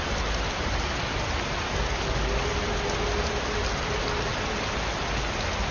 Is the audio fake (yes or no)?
no